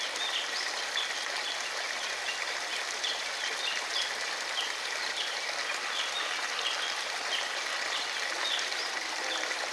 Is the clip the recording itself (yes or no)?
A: yes